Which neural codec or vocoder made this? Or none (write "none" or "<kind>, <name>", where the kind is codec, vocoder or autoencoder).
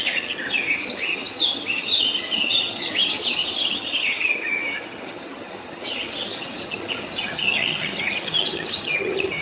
vocoder, HiFi-GAN